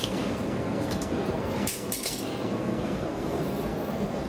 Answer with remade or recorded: remade